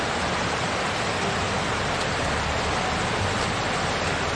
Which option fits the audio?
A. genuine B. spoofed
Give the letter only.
A